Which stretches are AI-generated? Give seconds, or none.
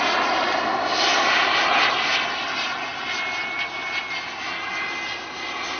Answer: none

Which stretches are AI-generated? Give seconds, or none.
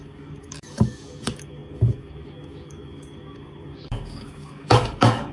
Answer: 0.0-5.3 (codec, DAC)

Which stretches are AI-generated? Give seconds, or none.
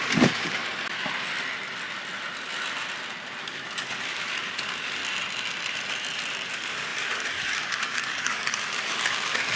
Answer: 0.0-0.6 (codec, DAC); 3.4-5.0; 6.5-9.6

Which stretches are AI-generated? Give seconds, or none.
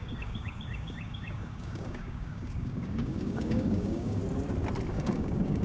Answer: 0.0-4.2 (codec, DAC); 4.9-5.6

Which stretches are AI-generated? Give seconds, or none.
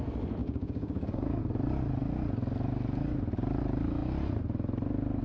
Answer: 0.4-1.4 (codec, DAC)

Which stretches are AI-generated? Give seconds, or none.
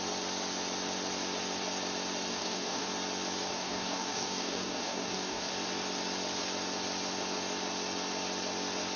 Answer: 2.3-2.9 (codec, DAC); 3.5-5.5